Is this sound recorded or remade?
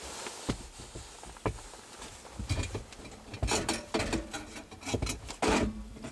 recorded